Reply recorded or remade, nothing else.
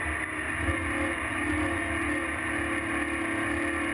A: recorded